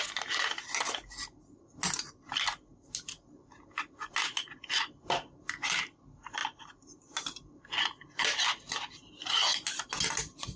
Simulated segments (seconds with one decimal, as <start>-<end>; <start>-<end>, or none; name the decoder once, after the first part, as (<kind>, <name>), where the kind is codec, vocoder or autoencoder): none